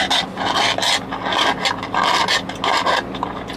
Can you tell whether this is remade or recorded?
recorded